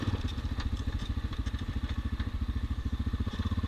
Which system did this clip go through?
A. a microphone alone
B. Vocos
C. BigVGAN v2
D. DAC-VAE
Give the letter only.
C